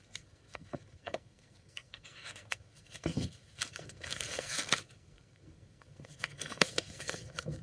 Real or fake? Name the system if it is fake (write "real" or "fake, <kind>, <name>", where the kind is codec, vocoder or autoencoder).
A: fake, codec, SNAC